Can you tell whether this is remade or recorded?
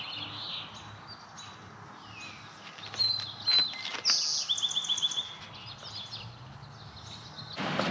recorded